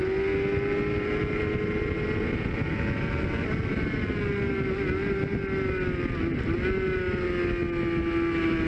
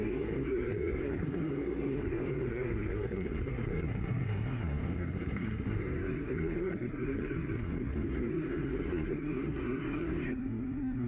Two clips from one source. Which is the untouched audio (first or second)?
first